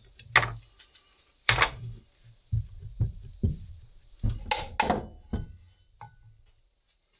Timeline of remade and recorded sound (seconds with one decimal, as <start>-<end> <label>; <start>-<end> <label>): 0.0-1.3 recorded; 1.3-4.4 remade; 4.4-7.2 recorded